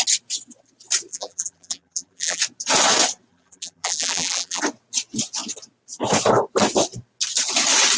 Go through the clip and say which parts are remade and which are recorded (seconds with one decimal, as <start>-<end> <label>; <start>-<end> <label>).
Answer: 0.0-1.1 recorded; 1.1-2.4 remade; 2.4-3.3 recorded; 3.3-4.6 remade; 4.6-8.0 recorded